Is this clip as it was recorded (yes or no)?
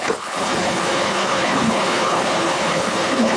no